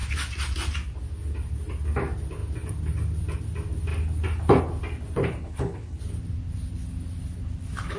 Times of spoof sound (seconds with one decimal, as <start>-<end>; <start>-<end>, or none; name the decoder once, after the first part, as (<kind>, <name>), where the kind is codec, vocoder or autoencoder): 5.2-6.0 (codec, HILCodec)